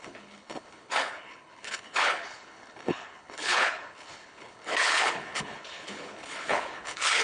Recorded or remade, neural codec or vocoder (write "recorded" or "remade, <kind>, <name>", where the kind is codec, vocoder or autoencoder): remade, codec, HILCodec